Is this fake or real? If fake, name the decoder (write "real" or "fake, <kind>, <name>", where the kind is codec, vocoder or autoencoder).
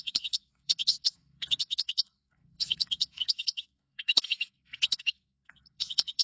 fake, codec, SNAC